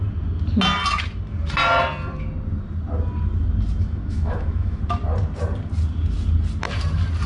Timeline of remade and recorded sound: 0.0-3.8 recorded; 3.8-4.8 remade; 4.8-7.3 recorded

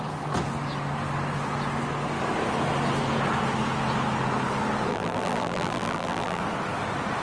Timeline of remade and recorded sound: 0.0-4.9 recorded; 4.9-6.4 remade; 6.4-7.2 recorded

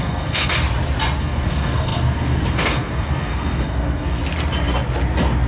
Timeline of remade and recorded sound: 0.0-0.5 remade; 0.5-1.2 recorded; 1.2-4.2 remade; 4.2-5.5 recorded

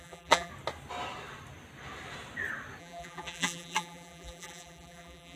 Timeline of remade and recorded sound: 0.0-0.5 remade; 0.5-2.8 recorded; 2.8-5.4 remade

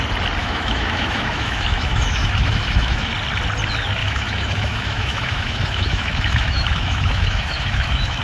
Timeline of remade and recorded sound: 0.0-0.4 recorded; 0.4-3.1 remade; 3.1-4.0 recorded; 4.0-8.2 remade

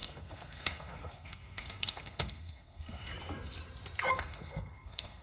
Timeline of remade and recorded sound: 0.0-3.1 remade; 3.1-4.1 recorded; 4.1-5.2 remade